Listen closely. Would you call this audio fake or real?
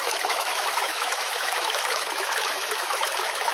fake